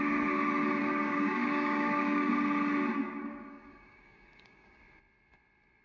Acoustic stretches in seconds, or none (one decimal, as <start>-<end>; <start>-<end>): 0.0-0.8; 2.3-3.0; 4.8-5.8